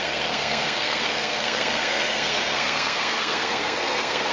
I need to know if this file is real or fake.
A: fake